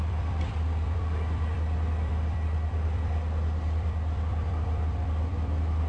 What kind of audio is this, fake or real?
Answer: fake